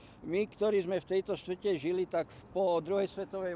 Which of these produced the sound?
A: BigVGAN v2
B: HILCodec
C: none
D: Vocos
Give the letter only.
C